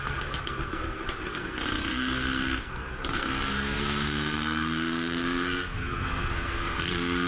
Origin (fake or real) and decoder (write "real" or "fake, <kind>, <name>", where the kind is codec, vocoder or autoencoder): fake, codec, SNAC